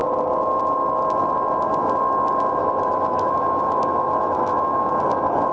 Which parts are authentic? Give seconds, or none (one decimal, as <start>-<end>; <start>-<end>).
0.0-2.6; 4.9-5.5